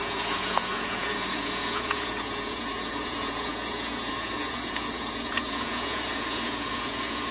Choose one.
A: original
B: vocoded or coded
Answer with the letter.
B